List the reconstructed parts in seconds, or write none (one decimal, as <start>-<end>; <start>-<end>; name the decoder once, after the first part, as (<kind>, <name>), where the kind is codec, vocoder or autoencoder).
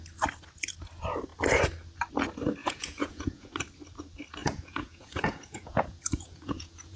2.6-3.5 (vocoder, Vocos); 4.4-7.0